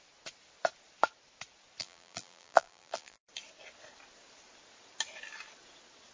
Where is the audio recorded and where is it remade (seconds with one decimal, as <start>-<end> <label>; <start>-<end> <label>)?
0.0-1.8 recorded; 1.8-3.2 remade; 3.2-6.1 recorded